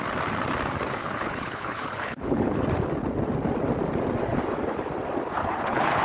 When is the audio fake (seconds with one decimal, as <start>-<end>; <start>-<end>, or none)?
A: 1.0-2.6; 5.4-6.0